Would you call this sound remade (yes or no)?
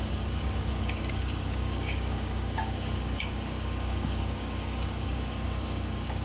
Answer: yes